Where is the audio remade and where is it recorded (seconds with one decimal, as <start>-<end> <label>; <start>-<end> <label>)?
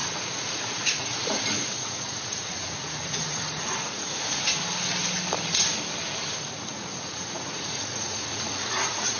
0.0-4.6 remade; 4.6-6.7 recorded; 6.7-9.2 remade